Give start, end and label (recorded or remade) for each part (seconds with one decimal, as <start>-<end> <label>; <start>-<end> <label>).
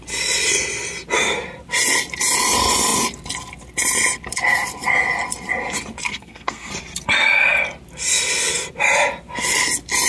0.0-6.1 recorded; 6.1-6.7 remade; 6.7-10.1 recorded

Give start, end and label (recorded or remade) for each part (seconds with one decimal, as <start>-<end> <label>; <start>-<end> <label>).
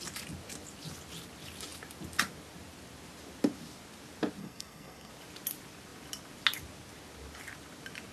0.0-4.4 recorded; 4.4-5.1 remade; 5.1-8.1 recorded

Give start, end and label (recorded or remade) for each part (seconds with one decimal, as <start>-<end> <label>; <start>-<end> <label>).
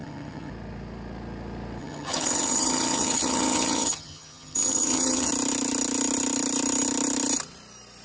0.0-0.5 remade; 0.5-1.8 recorded; 1.8-5.3 remade; 5.3-8.0 recorded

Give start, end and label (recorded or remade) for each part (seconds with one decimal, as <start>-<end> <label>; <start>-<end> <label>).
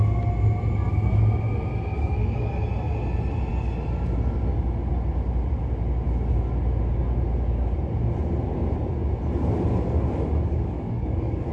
0.0-1.9 recorded; 1.9-2.5 remade; 2.5-9.7 recorded; 9.7-11.5 remade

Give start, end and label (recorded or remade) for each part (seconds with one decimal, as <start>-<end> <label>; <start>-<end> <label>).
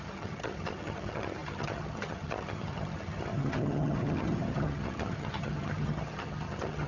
0.0-6.9 remade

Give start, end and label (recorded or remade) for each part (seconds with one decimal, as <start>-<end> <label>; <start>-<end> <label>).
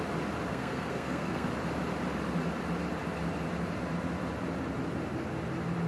0.0-0.5 recorded; 0.5-1.5 remade; 1.5-5.9 recorded